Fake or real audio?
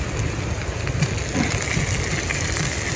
real